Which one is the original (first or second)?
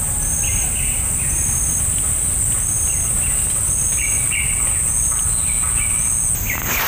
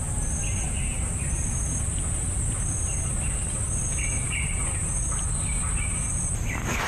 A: first